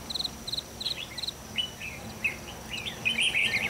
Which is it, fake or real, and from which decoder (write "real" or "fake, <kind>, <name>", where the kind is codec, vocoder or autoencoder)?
real